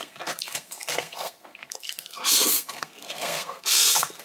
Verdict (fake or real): fake